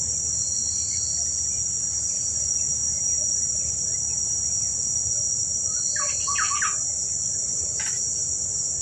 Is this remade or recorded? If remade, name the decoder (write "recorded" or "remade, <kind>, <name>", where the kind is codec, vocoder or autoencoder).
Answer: recorded